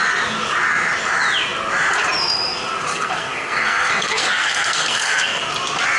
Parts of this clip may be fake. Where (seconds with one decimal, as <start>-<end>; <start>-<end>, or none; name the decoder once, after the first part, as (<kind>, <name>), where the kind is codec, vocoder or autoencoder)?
2.9-5.4 (codec, SNAC)